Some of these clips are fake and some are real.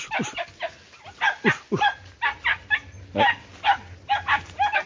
real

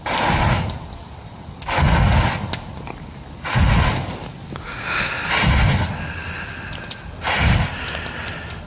real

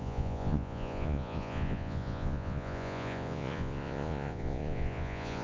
fake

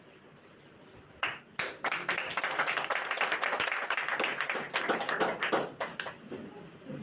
real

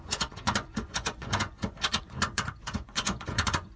fake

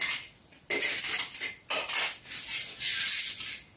real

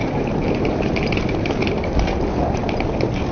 real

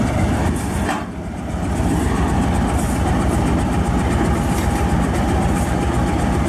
real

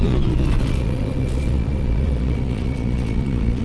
fake